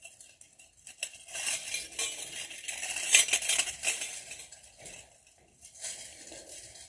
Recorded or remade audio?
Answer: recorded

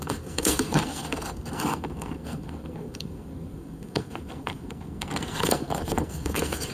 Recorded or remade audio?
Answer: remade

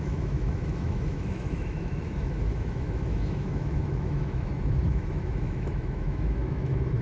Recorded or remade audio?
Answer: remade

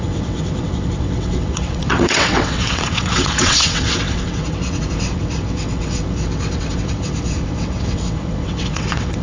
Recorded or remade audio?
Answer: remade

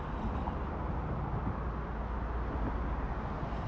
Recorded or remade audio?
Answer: recorded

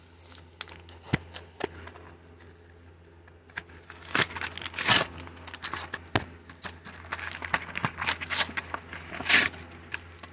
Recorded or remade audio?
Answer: recorded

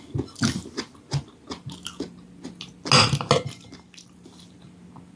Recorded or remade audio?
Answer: recorded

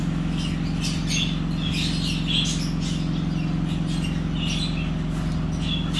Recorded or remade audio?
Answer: recorded